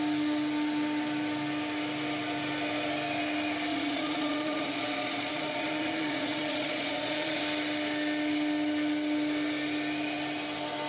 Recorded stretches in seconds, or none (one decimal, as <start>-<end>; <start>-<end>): 0.0-3.7; 7.4-10.9